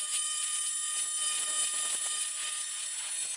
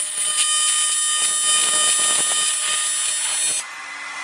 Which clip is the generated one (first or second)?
first